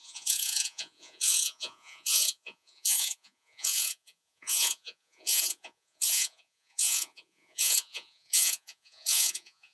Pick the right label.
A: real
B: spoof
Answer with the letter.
B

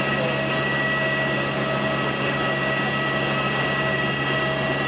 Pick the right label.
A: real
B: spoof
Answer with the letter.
A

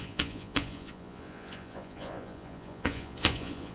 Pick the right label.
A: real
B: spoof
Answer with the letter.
B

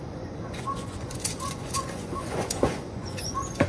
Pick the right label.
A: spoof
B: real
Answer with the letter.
A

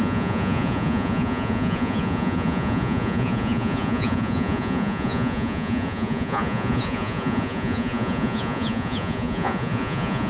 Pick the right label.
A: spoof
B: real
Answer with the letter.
A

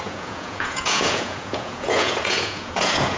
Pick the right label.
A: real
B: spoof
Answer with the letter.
B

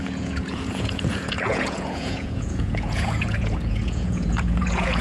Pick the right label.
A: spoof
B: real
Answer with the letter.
A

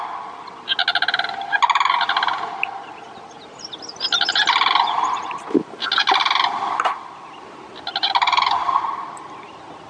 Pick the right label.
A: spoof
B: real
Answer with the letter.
B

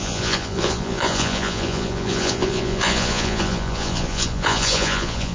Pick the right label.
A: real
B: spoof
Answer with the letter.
B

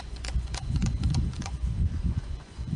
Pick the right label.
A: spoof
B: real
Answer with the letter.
A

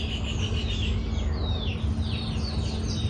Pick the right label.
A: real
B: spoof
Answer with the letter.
A